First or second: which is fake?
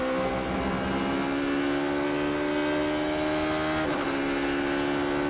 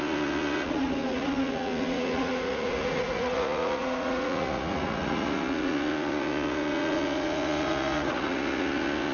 second